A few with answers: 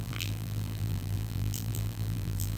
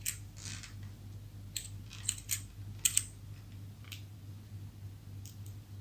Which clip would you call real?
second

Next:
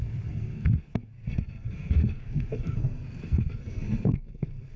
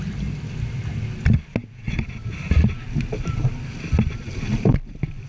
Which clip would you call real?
second